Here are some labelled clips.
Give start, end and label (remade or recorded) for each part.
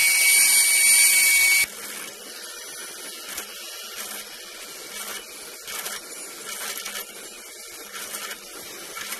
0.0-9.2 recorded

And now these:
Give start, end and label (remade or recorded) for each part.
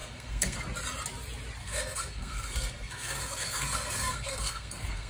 0.0-0.6 remade; 0.6-1.6 recorded; 1.6-5.1 remade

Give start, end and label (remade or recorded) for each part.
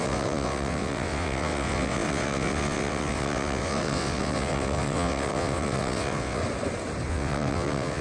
0.0-6.4 remade; 6.4-7.1 recorded; 7.1-8.0 remade